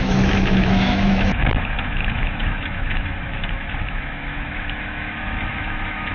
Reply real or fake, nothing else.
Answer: fake